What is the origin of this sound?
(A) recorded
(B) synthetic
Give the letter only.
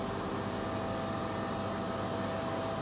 A